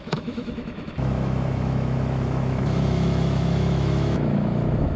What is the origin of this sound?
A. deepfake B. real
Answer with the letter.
A